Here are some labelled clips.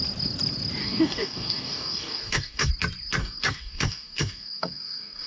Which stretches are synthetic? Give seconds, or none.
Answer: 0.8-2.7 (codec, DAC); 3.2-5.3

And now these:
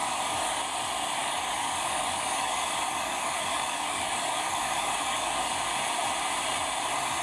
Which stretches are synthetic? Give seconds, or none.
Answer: 0.0-0.6 (codec, DAC); 1.2-5.5